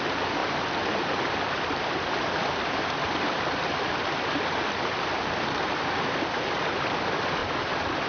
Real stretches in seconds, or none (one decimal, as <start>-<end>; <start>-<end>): 7.4-8.1